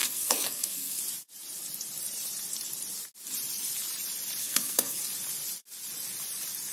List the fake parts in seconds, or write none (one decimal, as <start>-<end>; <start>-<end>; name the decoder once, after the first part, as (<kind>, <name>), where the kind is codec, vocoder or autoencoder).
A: 0.0-1.0 (codec, SNAC); 4.4-5.0